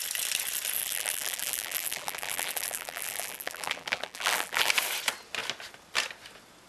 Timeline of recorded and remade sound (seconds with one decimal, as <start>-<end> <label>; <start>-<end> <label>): 0.0-0.8 recorded; 0.8-4.7 remade; 4.7-6.7 recorded

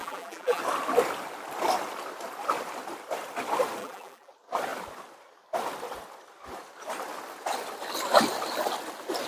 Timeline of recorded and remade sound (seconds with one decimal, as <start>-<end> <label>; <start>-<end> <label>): 0.0-0.6 remade; 0.6-3.8 recorded; 3.8-4.3 remade; 4.3-9.3 recorded